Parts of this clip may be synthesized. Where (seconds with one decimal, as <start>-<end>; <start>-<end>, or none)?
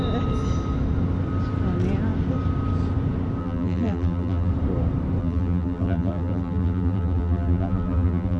3.4-4.5; 5.2-8.4